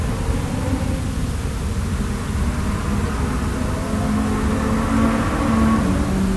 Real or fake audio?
real